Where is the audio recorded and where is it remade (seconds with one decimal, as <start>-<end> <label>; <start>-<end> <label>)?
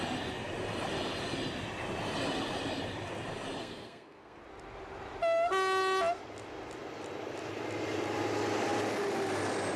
0.0-3.6 recorded; 3.6-4.4 remade; 4.4-9.8 recorded